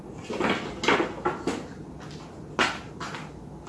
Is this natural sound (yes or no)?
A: yes